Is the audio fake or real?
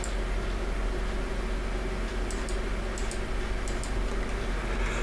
real